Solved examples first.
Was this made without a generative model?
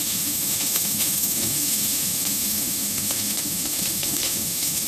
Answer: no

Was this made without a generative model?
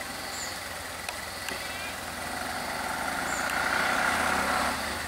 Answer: yes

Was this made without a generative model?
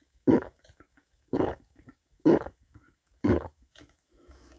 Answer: no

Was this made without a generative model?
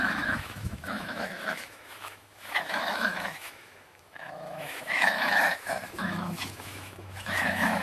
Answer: no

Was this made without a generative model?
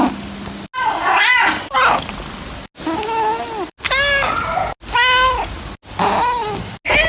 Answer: yes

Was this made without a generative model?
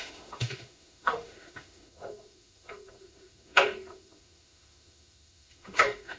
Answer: no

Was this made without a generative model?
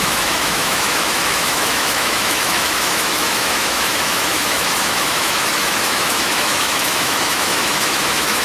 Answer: no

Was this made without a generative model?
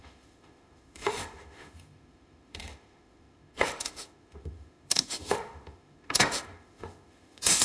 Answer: no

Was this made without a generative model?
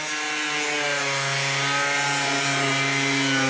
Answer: yes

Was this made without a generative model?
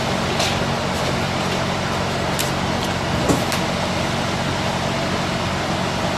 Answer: yes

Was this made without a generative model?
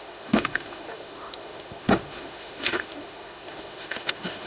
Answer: no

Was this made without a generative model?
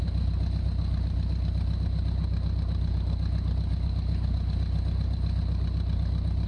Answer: yes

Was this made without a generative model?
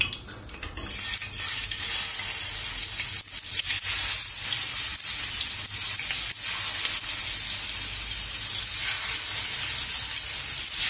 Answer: yes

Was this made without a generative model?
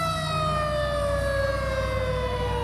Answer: yes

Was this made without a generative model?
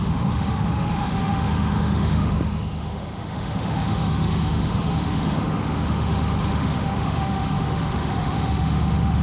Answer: no